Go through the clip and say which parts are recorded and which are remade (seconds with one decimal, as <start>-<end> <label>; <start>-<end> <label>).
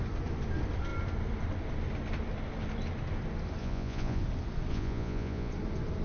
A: 0.0-3.6 recorded; 3.6-4.2 remade; 4.2-4.7 recorded; 4.7-5.5 remade; 5.5-6.0 recorded